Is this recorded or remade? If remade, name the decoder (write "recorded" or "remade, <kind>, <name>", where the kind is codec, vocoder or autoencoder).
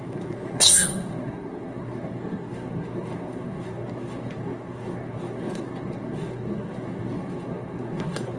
remade, codec, SNAC